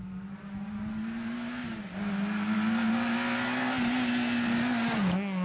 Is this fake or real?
real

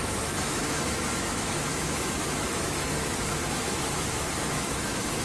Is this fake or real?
fake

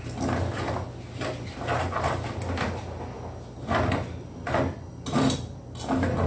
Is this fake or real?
real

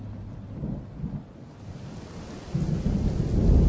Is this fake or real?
real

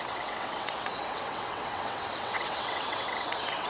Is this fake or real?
fake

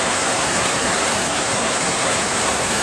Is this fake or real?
fake